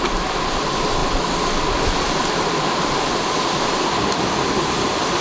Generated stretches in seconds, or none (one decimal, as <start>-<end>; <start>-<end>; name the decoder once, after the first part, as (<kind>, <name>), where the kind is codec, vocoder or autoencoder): none